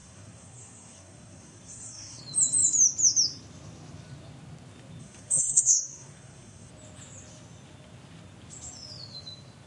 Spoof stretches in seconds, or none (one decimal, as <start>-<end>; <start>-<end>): 0.0-2.2; 5.0-6.7